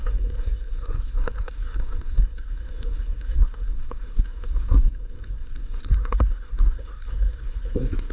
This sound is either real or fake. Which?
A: fake